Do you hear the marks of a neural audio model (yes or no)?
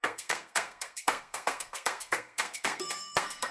yes